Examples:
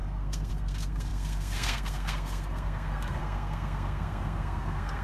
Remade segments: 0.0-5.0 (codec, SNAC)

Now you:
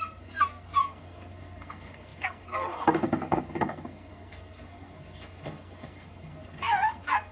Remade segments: 0.0-7.3 (codec, SNAC)

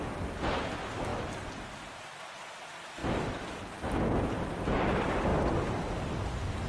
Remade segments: none

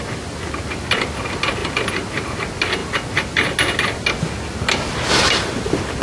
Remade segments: none